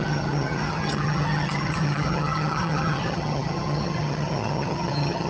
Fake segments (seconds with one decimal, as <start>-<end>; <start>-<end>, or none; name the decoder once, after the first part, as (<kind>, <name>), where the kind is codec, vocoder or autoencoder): 0.0-5.3 (vocoder, HiFi-GAN)

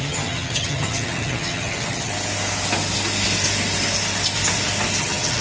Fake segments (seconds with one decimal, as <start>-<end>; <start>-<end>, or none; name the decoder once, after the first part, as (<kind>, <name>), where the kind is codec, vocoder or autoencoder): 0.0-2.1 (vocoder, HiFi-GAN); 5.0-5.4

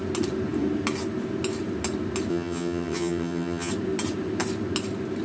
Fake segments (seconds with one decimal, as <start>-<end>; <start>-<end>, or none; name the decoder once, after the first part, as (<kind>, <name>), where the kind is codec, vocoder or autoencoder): 2.3-3.7 (vocoder, HiFi-GAN)

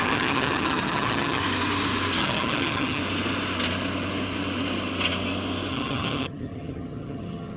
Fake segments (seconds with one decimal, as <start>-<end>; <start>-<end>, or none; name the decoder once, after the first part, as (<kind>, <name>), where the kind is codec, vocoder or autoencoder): 0.0-1.4 (vocoder, HiFi-GAN); 2.2-3.0; 5.7-7.6

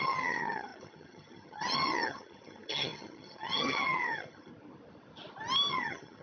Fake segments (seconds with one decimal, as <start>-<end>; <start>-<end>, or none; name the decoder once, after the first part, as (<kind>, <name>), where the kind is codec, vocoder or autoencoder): 0.0-4.5 (vocoder, HiFi-GAN); 5.7-6.2

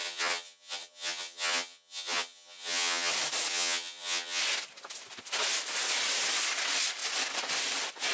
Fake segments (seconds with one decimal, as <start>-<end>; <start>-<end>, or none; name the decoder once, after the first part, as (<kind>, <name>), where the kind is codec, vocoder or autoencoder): 0.0-3.1 (vocoder, HiFi-GAN); 3.5-4.4

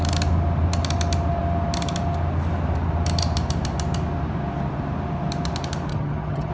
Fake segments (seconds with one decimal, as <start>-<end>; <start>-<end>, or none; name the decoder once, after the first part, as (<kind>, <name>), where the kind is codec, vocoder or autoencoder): 5.9-6.5 (vocoder, HiFi-GAN)

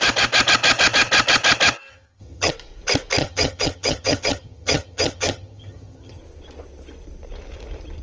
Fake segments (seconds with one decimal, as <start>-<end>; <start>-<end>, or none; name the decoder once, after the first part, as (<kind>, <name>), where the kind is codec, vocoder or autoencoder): 1.9-2.5 (vocoder, HiFi-GAN); 3.2-6.2